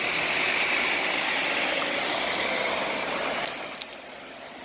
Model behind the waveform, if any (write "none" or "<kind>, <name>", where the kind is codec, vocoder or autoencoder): none